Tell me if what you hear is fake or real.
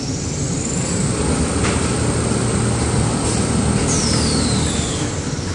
real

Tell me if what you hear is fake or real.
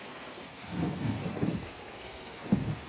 fake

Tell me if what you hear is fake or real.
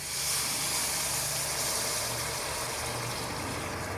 real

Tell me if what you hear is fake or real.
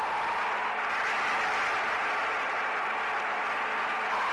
real